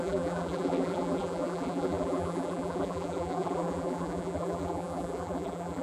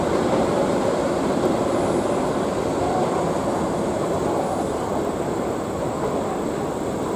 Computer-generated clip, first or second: first